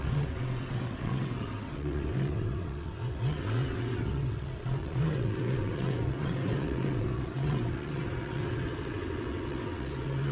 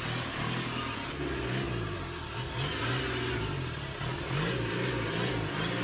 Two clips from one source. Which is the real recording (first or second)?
second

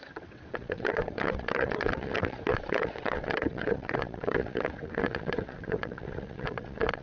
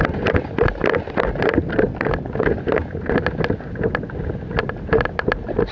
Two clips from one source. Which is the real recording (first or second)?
second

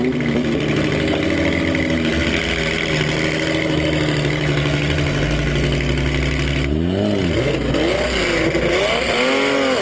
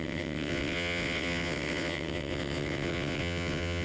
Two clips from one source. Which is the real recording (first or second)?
first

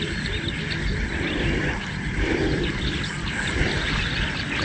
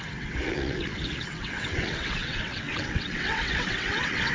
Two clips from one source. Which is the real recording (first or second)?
first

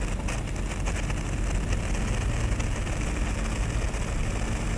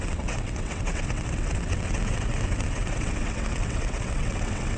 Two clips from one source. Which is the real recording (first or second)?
first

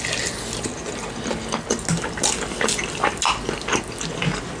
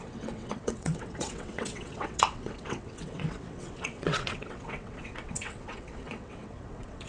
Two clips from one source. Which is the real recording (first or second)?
first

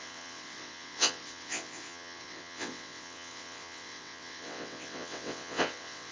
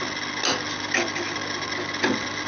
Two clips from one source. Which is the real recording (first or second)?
second